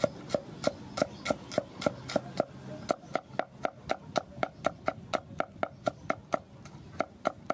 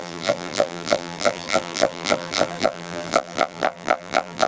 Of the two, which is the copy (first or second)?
second